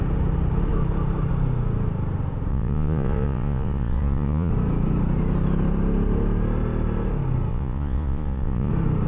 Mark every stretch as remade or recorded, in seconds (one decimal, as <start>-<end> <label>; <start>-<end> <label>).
0.0-2.5 recorded; 2.5-4.5 remade; 4.5-7.5 recorded; 7.5-8.7 remade; 8.7-9.1 recorded